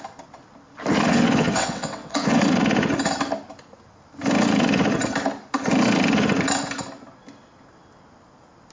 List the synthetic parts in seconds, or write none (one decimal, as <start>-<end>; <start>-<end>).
1.1-2.4